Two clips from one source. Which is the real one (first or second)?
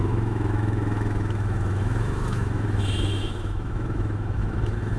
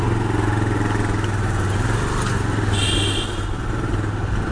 second